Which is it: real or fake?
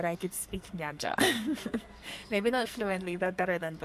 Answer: fake